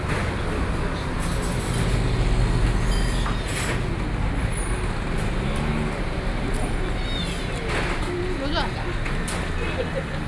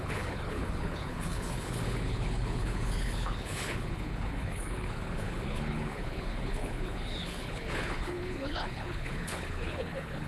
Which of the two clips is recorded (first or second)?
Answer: first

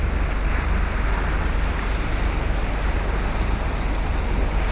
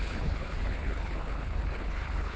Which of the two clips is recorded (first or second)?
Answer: first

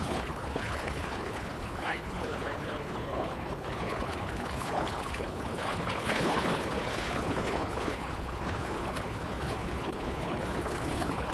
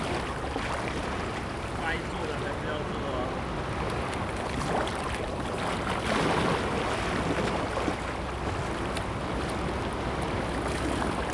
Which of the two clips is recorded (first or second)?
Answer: second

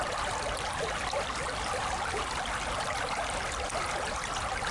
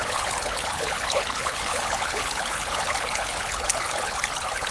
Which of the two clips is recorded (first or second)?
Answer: first